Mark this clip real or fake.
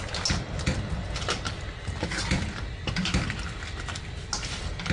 real